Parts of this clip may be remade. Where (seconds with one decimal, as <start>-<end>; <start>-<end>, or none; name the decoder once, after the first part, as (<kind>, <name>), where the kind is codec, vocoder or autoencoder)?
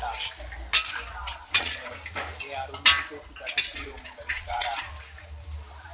1.2-1.9 (vocoder, Vocos); 3.7-4.9